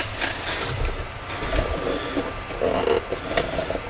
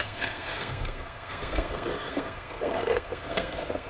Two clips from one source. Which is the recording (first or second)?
first